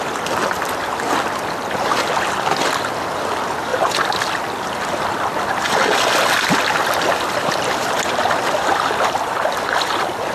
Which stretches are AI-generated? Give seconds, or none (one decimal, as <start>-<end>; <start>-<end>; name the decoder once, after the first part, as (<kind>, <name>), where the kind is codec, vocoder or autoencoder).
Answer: none